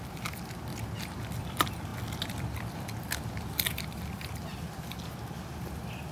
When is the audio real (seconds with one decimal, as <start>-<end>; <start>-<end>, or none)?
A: 0.0-6.1